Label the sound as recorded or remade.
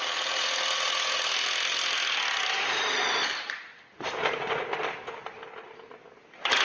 recorded